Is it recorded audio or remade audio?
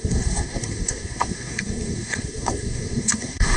remade